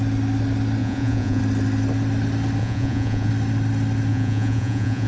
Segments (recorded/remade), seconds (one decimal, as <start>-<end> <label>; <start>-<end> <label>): 0.0-0.8 recorded; 0.8-1.4 remade; 1.4-2.6 recorded; 2.6-3.3 remade; 3.3-4.1 recorded; 4.1-5.1 remade